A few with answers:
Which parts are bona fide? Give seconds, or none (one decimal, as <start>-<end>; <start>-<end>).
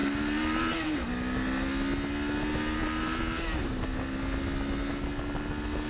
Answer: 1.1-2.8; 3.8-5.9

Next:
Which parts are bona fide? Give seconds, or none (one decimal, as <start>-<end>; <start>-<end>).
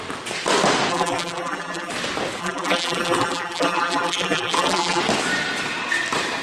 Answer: 0.0-0.9; 1.9-2.4; 5.0-6.4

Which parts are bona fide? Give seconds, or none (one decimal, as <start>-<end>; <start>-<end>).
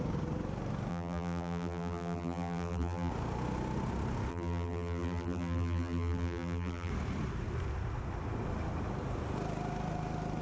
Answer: 0.0-0.9; 3.1-4.3; 6.9-10.4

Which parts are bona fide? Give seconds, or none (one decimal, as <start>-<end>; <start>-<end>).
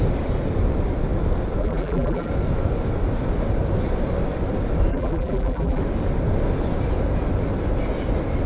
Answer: 0.0-1.6; 2.3-4.9; 5.8-8.5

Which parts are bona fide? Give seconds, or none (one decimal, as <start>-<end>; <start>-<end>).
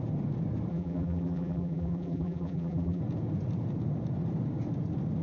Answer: 0.0-0.7; 3.0-5.2